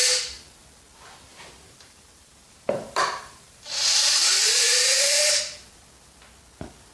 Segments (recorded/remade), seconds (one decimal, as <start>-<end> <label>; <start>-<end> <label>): 0.0-1.3 recorded; 1.3-5.4 remade; 5.4-6.9 recorded